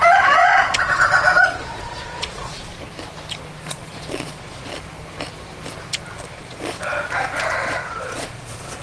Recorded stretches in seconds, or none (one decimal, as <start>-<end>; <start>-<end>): 2.7-3.6; 4.7-6.3; 6.9-7.6